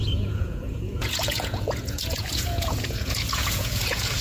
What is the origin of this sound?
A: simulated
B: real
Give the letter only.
A